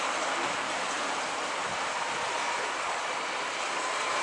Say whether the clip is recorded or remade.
recorded